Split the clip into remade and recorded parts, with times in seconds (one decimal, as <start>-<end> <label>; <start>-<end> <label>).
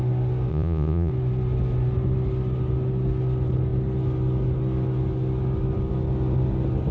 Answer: 0.0-0.5 recorded; 0.5-1.1 remade; 1.1-6.9 recorded